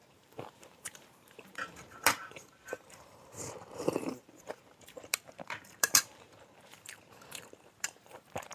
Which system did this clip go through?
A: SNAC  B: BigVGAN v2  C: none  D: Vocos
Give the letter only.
B